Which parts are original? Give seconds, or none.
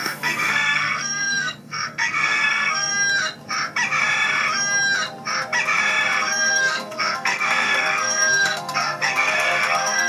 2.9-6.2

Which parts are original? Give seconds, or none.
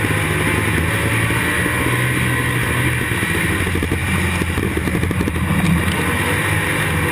0.0-7.1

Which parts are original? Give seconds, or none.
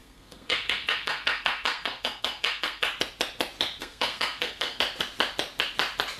2.9-3.8; 4.8-6.2